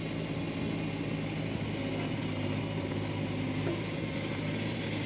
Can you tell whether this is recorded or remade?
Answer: recorded